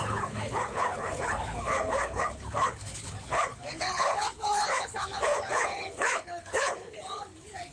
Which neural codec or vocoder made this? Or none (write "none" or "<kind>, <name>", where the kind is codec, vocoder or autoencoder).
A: codec, HILCodec